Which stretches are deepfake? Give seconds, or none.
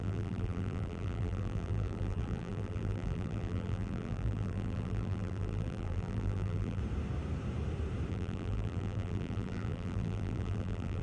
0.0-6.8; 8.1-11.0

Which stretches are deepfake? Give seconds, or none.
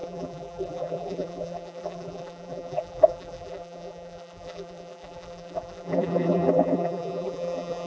0.0-7.9